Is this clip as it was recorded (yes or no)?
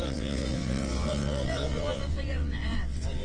no